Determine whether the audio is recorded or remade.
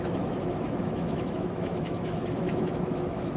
remade